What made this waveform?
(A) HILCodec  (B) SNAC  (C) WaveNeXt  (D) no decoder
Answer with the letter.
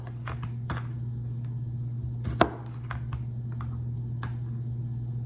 D